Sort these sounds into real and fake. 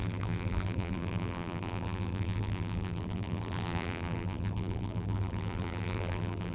fake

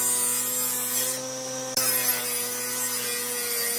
real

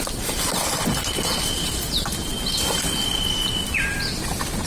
real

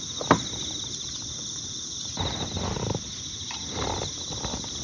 real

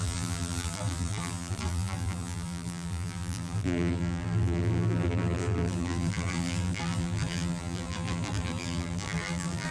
fake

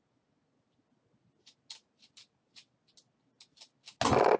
real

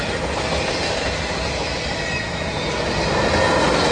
real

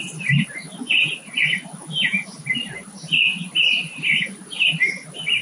fake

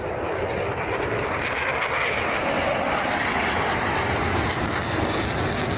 fake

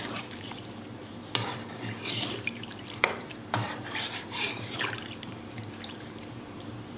fake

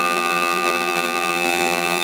fake